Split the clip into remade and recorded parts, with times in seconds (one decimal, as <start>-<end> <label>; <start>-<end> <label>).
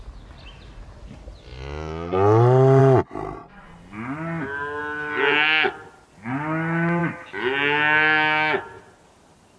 0.0-9.6 recorded